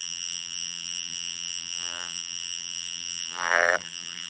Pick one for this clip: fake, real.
fake